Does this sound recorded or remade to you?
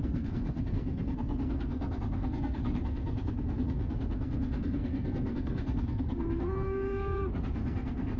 remade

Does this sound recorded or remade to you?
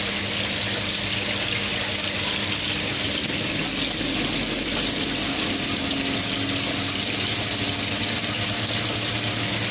recorded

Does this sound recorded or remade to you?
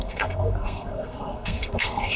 remade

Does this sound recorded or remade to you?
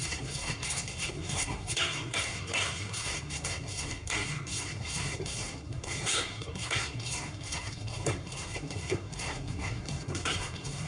remade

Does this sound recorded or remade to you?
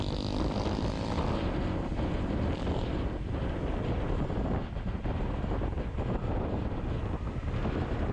recorded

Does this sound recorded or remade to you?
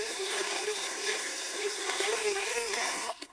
remade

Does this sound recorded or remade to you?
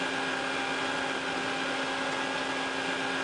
recorded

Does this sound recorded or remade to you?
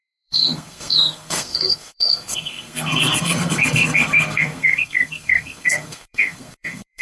remade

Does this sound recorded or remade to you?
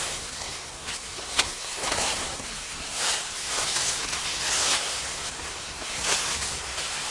remade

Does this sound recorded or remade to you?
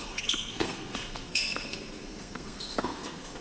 remade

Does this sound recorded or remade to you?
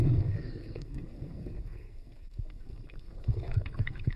remade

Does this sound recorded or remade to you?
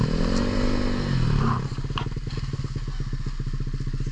recorded